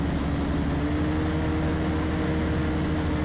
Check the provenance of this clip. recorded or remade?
recorded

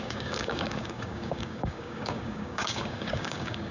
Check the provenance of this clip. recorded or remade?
remade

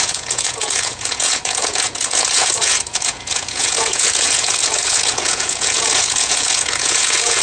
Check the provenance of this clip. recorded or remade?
remade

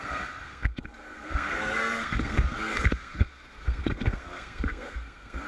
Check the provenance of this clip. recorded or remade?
remade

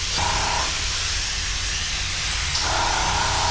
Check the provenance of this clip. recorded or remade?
recorded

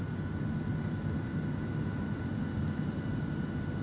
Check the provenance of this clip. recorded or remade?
recorded